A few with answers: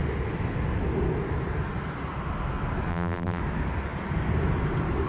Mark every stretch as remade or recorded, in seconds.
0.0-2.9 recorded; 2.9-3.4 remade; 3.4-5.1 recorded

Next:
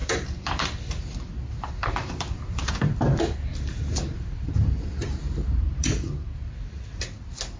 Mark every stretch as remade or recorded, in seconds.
0.0-1.0 remade; 1.0-1.8 recorded; 1.8-6.4 remade; 6.4-7.6 recorded

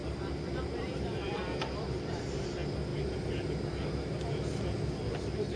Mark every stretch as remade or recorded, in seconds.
0.0-2.2 remade; 2.2-5.6 recorded